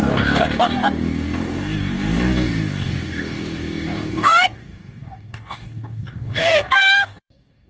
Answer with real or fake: fake